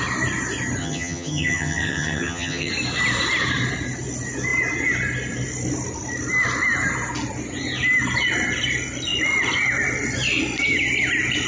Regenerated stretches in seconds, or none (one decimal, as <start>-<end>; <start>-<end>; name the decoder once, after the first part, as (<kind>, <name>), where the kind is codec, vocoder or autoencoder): 0.8-2.7 (vocoder, HiFi-GAN)